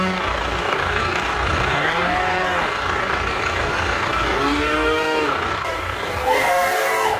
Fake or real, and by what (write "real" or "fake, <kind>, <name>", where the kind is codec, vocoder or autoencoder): fake, codec, DAC